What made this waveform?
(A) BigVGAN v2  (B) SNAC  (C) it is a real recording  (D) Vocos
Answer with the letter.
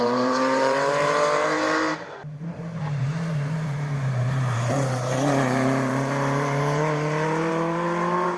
A